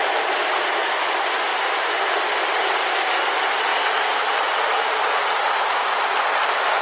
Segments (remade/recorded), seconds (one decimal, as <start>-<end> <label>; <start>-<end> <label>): 0.0-3.7 remade; 3.7-6.8 recorded